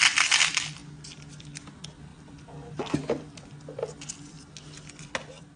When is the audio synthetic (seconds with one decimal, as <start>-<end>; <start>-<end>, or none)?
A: 2.1-4.4